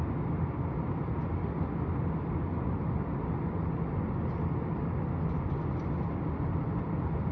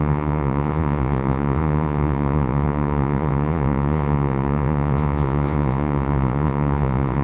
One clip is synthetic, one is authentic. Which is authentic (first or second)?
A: first